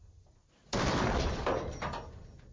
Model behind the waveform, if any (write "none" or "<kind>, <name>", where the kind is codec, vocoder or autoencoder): none